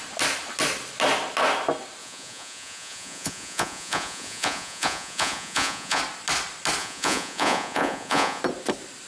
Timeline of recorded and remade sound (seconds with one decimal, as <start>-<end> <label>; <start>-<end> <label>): 0.0-2.0 recorded; 2.0-6.0 remade; 6.0-6.8 recorded; 6.8-8.4 remade; 8.4-9.1 recorded